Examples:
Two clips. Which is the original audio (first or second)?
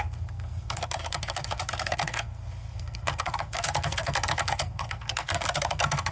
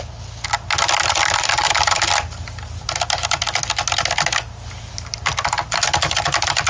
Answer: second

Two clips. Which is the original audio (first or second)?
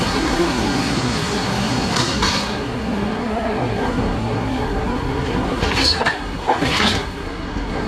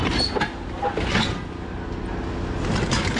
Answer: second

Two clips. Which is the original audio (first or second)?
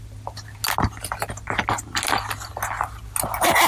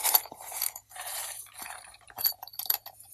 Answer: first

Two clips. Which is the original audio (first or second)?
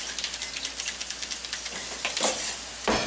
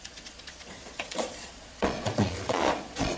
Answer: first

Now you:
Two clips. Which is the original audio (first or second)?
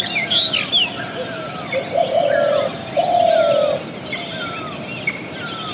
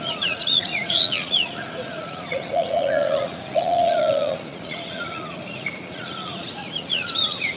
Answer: first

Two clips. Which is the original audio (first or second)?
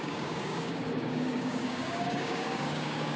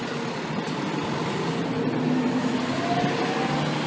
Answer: second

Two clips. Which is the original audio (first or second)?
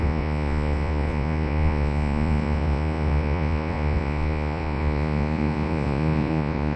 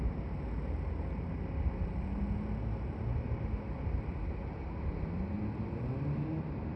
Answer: second